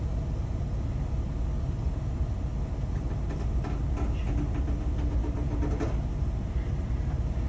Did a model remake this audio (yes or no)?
no